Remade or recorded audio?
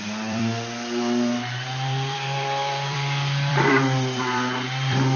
remade